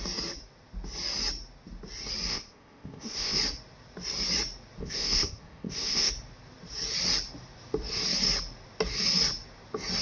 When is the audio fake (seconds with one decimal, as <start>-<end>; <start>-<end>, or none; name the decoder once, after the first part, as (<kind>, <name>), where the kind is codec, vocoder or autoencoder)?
2.3-3.4 (codec, ZipCodec); 4.8-6.1